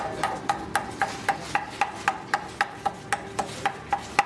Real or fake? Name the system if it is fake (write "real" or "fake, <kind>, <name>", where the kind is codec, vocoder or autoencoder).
real